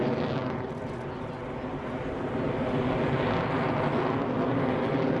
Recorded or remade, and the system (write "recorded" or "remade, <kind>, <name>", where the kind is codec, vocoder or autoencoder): recorded